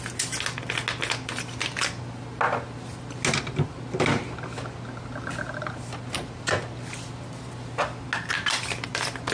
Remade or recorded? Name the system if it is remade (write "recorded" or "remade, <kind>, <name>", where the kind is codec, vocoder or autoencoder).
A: recorded